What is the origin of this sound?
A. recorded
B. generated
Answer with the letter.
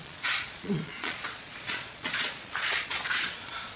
B